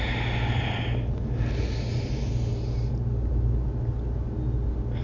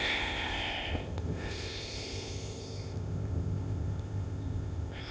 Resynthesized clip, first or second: second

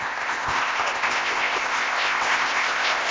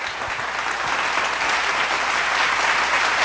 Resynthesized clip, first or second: first